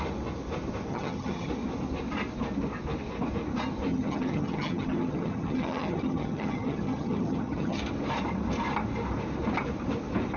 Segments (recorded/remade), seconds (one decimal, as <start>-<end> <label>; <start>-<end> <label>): 0.0-0.9 recorded; 0.9-1.5 remade; 1.5-3.9 recorded; 3.9-7.8 remade; 7.8-10.4 recorded